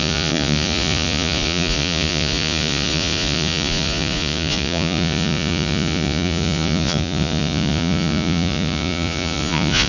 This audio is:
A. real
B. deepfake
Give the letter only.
B